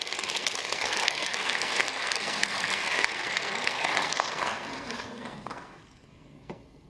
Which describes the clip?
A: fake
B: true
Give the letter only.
A